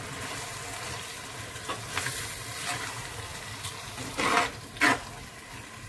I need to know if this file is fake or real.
real